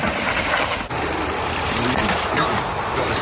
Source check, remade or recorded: remade